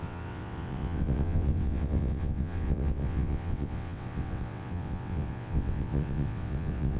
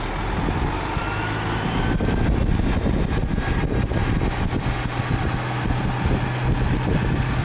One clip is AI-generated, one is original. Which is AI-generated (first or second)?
first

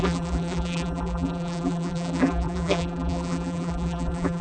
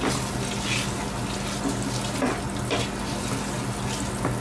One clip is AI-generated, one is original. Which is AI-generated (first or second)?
first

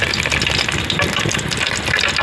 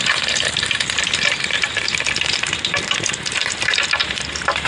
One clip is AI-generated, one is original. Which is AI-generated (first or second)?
second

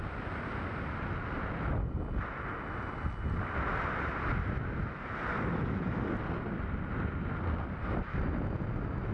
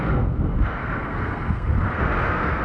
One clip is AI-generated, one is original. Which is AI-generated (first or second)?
second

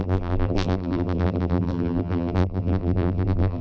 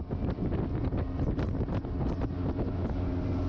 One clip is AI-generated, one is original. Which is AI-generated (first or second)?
first